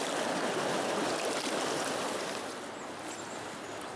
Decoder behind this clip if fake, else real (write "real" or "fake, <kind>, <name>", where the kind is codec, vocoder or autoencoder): real